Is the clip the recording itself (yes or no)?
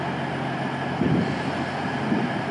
yes